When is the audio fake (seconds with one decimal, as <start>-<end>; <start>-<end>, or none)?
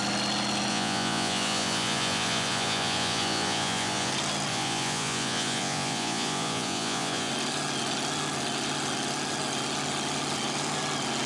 0.7-4.1; 4.5-7.3